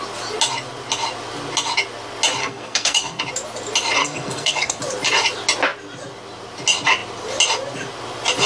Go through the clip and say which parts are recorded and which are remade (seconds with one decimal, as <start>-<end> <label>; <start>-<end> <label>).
0.0-2.4 recorded; 2.4-3.2 remade; 3.2-4.0 recorded; 4.0-4.8 remade; 4.8-8.5 recorded